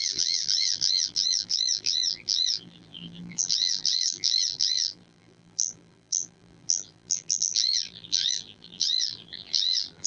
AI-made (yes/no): yes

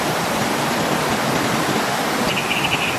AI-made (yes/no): no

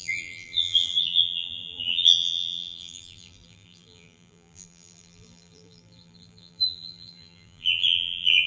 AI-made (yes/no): yes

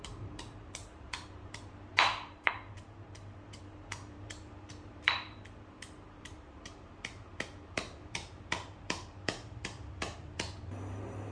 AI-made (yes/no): yes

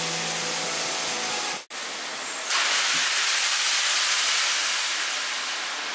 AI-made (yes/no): no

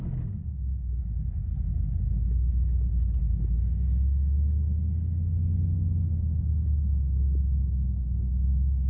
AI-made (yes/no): no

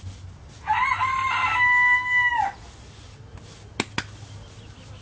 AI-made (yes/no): no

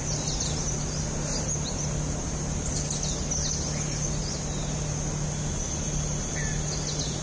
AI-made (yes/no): no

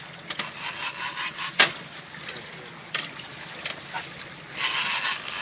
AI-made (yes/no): no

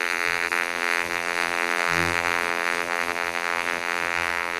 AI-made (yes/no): yes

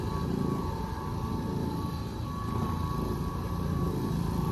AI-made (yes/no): yes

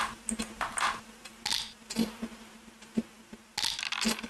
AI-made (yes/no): no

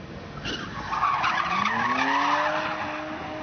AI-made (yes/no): no